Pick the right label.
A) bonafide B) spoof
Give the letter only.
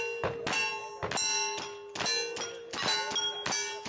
A